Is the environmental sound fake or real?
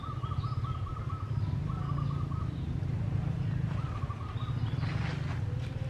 real